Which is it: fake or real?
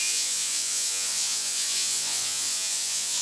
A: fake